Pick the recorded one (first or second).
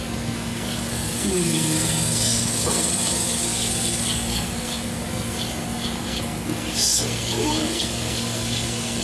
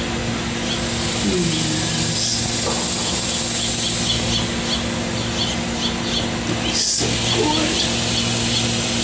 second